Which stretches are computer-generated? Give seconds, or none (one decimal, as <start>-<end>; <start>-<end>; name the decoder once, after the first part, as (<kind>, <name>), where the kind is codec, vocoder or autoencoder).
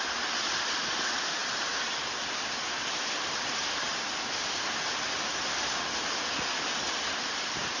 none